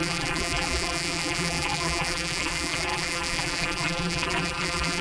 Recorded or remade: remade